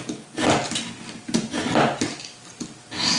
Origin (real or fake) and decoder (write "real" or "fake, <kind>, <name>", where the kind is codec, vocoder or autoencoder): real